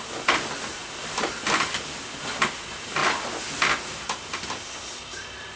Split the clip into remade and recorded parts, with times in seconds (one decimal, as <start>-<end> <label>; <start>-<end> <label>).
0.0-5.6 recorded